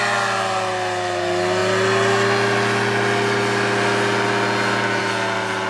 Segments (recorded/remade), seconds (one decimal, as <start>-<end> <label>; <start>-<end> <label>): 0.0-5.7 recorded